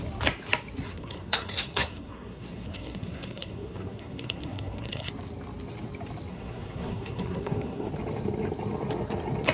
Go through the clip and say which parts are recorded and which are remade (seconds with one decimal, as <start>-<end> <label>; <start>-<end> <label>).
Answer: 0.0-0.9 recorded; 0.9-5.1 remade; 5.1-6.3 recorded; 6.3-7.9 remade; 7.9-9.5 recorded